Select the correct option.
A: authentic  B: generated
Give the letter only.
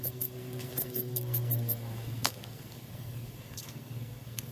B